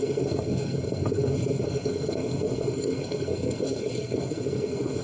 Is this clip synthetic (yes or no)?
yes